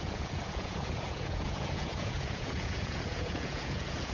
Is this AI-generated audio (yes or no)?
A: yes